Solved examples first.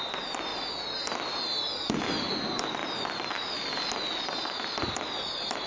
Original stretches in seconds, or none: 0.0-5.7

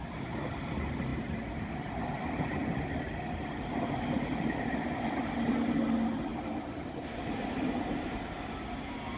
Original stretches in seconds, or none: 0.0-2.6; 3.1-4.3; 5.5-6.3; 7.5-9.2